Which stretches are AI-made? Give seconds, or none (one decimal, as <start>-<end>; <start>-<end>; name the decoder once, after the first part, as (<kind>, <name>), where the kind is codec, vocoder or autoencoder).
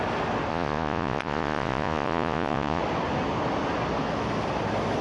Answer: 0.5-2.8 (vocoder, Vocos)